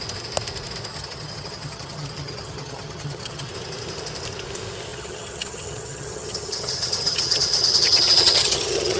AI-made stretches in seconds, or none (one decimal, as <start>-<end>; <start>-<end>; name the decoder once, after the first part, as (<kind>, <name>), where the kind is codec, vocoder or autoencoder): 0.9-3.5 (vocoder, HiFi-GAN); 4.9-9.0